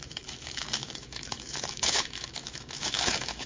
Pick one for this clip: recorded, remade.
remade